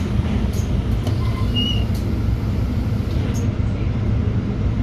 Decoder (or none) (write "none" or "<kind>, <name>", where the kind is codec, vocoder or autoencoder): none